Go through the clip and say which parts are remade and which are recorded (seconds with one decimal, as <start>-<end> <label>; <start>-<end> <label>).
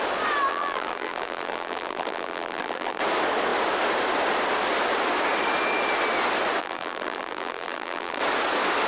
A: 0.0-0.5 recorded; 0.5-3.0 remade; 3.0-6.6 recorded; 6.6-8.2 remade; 8.2-8.9 recorded